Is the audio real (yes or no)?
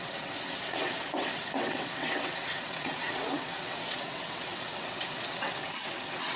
no